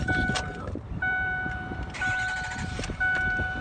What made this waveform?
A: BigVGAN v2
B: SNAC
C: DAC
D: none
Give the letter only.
A